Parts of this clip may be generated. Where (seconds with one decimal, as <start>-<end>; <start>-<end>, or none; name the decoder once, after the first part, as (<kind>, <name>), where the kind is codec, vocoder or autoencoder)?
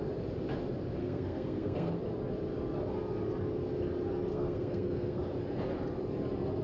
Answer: 1.0-2.0 (codec, SNAC); 4.3-5.2